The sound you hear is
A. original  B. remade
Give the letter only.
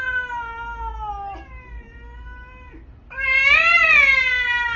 A